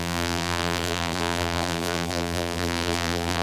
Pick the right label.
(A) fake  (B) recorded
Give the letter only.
A